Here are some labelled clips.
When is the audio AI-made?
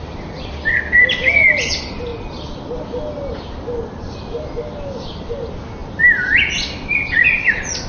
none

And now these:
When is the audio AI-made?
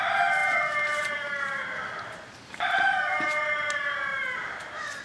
0.4-3.4 (vocoder, BigVGAN v2); 4.1-5.0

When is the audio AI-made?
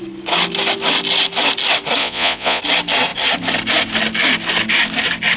2.0-2.6 (vocoder, Vocos)